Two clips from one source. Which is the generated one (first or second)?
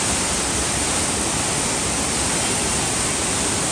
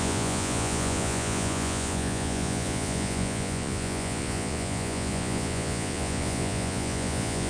second